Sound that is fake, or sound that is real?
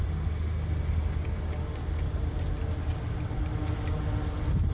real